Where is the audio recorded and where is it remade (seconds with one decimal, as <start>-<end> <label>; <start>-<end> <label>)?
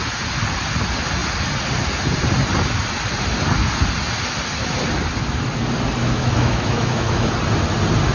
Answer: 0.0-6.0 recorded; 6.0-7.3 remade; 7.3-8.1 recorded